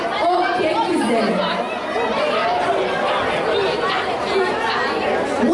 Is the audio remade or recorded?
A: recorded